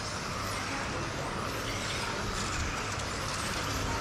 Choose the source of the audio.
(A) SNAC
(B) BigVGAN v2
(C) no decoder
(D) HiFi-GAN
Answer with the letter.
C